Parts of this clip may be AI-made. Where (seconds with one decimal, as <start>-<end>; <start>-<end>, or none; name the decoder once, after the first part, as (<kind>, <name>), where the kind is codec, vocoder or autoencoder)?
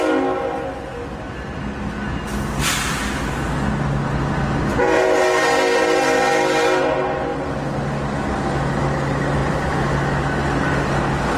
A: 4.7-5.2 (vocoder, Vocos)